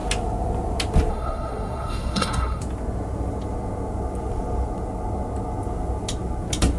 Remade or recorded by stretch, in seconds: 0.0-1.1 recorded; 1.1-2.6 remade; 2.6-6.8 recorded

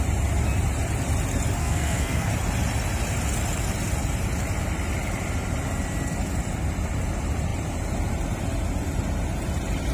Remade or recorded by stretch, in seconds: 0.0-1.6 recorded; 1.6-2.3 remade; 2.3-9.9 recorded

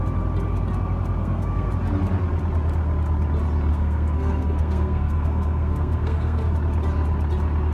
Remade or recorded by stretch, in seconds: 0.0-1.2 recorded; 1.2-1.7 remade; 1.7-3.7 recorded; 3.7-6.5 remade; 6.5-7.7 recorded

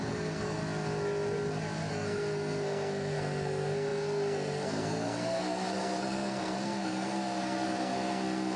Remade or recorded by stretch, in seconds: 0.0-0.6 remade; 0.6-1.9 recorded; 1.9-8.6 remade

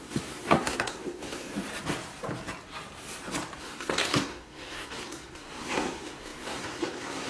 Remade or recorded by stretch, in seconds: 0.0-1.5 remade; 1.5-3.6 recorded; 3.6-7.3 remade

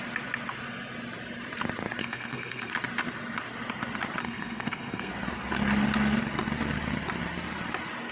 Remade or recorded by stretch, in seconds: 0.0-2.0 recorded; 2.0-2.7 remade; 2.7-4.2 recorded; 4.2-5.1 remade; 5.1-8.1 recorded